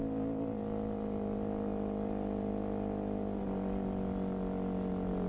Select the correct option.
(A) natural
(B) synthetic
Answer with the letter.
A